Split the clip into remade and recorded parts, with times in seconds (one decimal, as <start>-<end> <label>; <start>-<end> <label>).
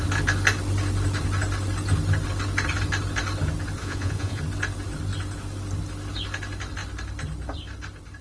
0.0-3.8 recorded; 3.8-4.4 remade; 4.4-8.2 recorded